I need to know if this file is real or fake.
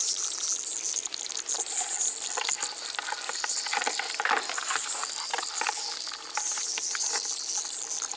real